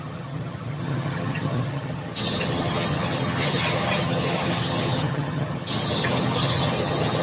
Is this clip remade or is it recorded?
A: remade